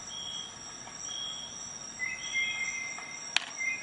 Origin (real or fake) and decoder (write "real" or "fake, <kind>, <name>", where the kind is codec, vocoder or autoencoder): real